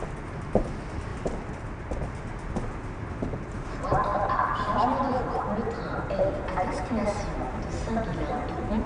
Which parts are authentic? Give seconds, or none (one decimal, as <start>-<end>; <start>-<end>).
0.0-1.1; 2.5-4.1; 6.9-8.9